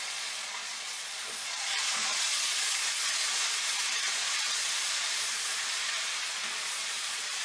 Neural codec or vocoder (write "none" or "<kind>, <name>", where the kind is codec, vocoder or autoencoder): vocoder, Vocos